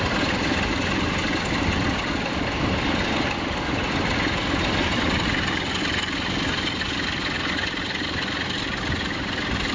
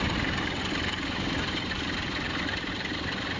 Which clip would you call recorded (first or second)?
first